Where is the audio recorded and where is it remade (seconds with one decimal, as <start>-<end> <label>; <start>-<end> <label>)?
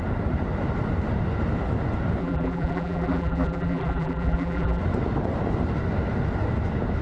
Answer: 0.0-2.2 recorded; 2.2-4.8 remade; 4.8-7.0 recorded